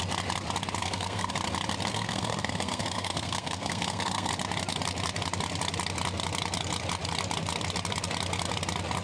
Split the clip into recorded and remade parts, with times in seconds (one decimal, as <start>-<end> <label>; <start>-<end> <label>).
0.0-0.8 recorded; 0.8-1.3 remade; 1.3-1.9 recorded; 1.9-4.3 remade; 4.3-9.0 recorded